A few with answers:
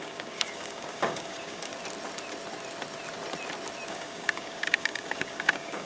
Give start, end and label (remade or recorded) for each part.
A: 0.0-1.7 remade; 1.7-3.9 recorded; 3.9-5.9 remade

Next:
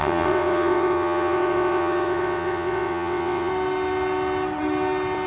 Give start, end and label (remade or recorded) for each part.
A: 0.0-3.5 remade; 3.5-5.3 recorded